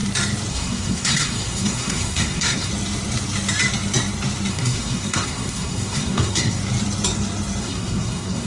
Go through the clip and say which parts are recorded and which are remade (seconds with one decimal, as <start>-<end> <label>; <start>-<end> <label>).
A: 0.0-0.5 recorded; 0.5-2.7 remade; 2.7-4.5 recorded; 4.5-6.6 remade; 6.6-7.6 recorded; 7.6-8.5 remade